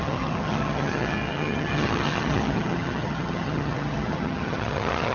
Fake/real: fake